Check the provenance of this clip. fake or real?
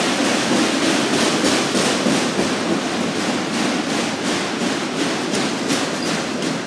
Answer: real